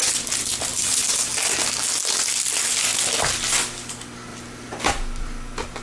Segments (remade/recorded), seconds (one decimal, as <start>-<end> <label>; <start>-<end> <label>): 0.0-0.7 recorded; 0.7-1.3 remade; 1.3-4.3 recorded; 4.3-4.9 remade; 4.9-5.8 recorded